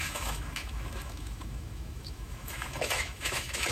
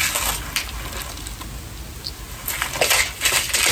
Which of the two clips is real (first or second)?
second